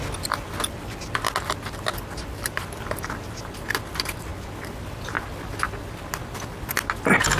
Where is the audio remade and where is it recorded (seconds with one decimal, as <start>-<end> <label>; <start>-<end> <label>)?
0.0-7.4 recorded